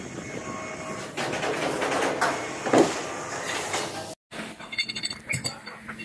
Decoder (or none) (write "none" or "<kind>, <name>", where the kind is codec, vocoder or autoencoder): none